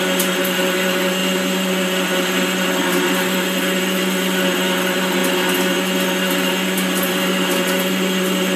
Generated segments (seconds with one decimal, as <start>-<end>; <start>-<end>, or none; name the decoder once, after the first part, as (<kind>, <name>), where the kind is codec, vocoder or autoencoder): none